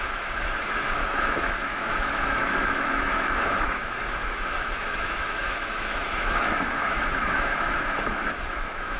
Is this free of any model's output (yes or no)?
no